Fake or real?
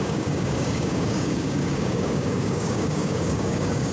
fake